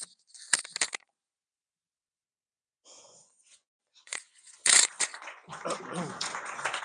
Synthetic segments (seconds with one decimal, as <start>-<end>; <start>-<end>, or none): 2.5-6.8